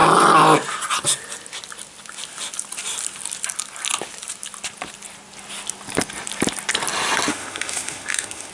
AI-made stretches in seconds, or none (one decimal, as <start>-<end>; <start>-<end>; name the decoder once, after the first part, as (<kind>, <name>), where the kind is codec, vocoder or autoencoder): 7.3-8.5 (autoencoder, DAC-VAE)